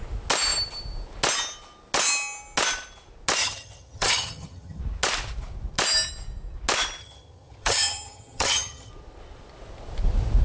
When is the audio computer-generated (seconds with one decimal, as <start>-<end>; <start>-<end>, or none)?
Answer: 3.4-4.8; 7.0-8.9

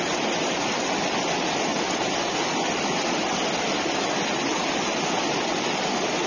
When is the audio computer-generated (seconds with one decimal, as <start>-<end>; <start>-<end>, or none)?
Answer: none

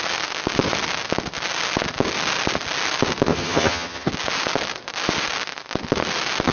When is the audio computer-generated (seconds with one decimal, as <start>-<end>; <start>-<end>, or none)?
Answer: 3.3-4.1